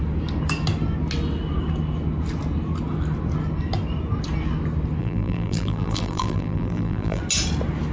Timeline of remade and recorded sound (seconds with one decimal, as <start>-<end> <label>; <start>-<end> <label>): 0.0-5.0 recorded; 5.0-7.2 remade; 7.2-7.9 recorded